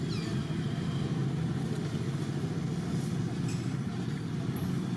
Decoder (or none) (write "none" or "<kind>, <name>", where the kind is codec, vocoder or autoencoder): none